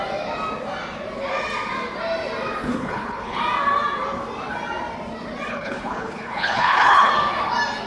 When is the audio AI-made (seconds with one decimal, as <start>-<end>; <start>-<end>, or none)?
2.7-3.4; 5.5-7.1